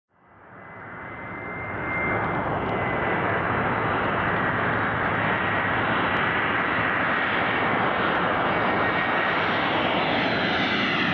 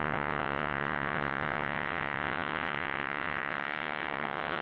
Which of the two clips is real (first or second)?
first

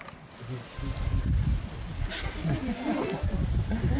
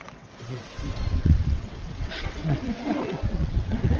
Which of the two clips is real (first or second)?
first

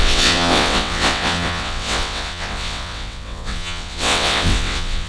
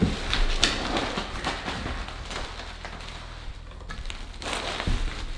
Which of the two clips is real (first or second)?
second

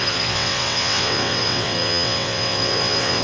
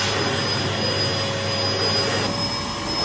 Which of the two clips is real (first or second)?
second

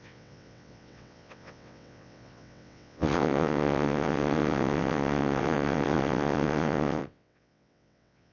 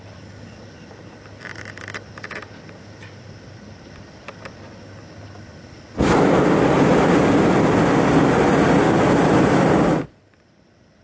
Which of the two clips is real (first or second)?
second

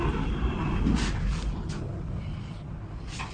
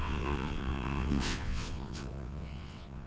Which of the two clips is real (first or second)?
first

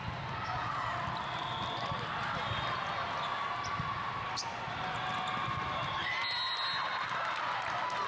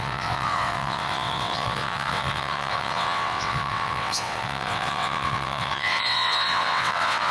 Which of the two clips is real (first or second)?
first